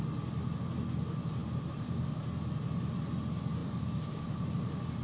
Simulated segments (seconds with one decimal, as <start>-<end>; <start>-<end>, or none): 1.4-2.0; 3.6-4.5